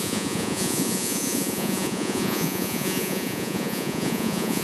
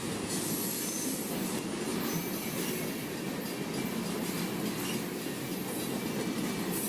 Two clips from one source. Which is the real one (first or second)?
second